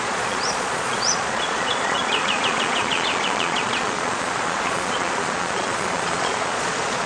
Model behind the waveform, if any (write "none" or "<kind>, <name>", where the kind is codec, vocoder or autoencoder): vocoder, Vocos